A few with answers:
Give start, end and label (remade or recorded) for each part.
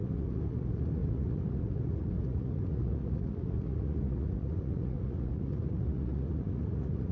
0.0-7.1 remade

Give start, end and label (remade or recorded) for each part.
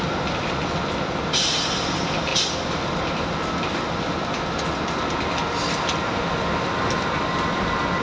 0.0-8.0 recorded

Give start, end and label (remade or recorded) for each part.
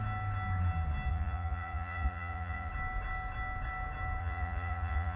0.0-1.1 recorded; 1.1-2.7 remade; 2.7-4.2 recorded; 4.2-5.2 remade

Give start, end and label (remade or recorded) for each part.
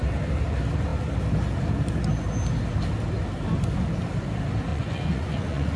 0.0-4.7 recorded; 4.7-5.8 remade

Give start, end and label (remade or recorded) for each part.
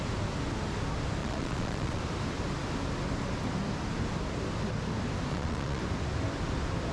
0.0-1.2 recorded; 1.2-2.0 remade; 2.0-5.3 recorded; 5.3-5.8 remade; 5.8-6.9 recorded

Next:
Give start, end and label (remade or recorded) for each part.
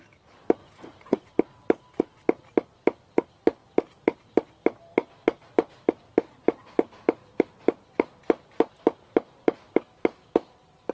0.0-0.6 recorded; 0.6-1.3 remade; 1.3-10.9 recorded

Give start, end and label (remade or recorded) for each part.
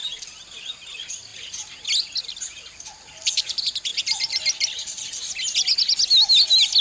0.0-6.8 recorded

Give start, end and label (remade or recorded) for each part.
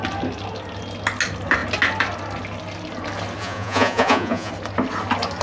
0.0-3.4 recorded; 3.4-4.5 remade; 4.5-5.4 recorded